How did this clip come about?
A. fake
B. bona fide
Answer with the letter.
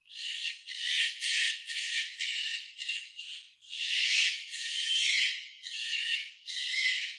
A